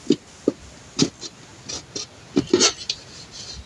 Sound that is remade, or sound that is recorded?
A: recorded